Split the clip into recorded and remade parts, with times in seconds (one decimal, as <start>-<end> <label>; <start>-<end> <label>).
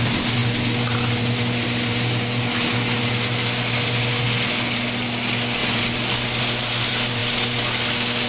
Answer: 0.0-5.6 recorded; 5.6-6.4 remade; 6.4-8.3 recorded